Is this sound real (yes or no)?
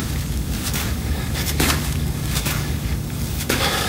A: no